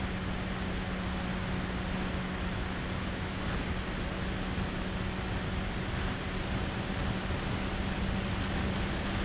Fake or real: real